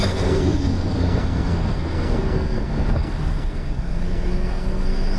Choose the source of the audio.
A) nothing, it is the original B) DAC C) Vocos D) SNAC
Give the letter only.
D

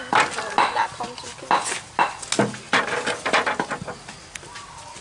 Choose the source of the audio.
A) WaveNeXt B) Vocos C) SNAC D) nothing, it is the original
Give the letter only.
D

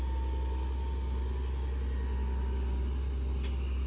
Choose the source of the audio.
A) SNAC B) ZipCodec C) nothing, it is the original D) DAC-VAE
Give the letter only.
C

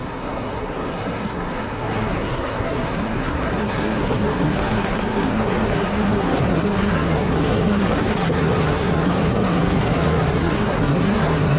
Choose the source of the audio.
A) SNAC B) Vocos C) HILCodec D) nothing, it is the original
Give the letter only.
A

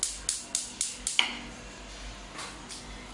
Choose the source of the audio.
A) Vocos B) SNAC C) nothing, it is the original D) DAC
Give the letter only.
C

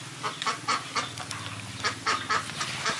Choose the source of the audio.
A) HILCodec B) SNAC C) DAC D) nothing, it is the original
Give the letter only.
D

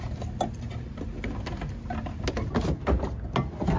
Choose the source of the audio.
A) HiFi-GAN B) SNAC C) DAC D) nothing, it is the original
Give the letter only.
D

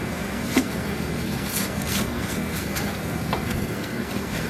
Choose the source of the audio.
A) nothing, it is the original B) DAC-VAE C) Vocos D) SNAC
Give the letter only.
D